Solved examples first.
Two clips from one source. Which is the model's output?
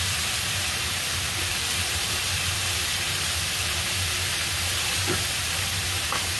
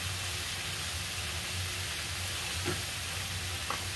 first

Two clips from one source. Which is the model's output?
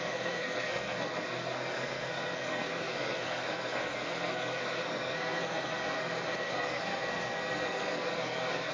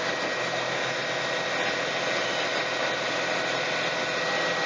first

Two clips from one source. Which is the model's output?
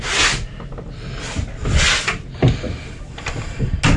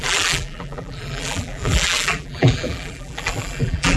second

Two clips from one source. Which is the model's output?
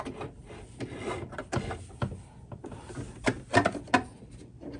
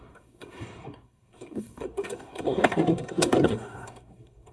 second